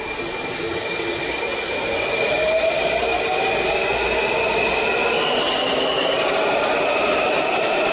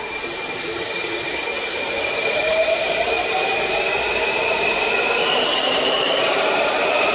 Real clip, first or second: first